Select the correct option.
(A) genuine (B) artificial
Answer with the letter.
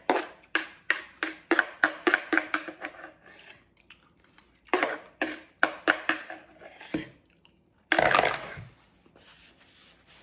B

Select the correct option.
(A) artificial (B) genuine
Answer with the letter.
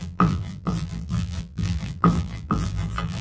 A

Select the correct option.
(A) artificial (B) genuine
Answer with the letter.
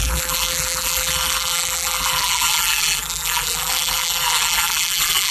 A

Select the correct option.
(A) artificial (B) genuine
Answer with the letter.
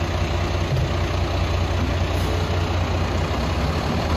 B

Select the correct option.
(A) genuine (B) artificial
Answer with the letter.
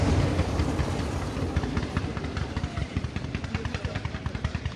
A